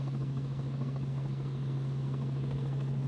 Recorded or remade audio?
remade